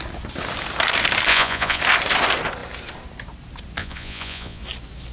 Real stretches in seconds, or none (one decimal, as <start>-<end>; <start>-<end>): 0.0-1.3; 1.8-3.8; 4.6-5.1